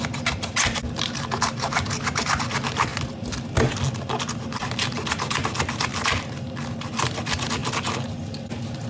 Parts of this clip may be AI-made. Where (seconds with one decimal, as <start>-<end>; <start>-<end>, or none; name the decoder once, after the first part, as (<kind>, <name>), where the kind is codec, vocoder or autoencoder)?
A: none